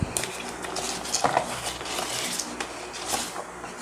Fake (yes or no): no